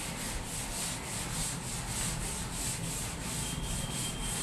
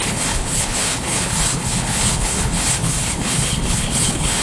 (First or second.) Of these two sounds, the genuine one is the first